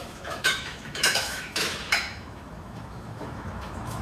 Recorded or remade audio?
remade